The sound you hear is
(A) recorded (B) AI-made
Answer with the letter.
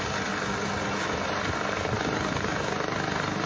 A